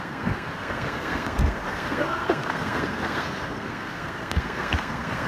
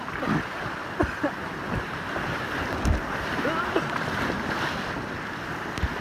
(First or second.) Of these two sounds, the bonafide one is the second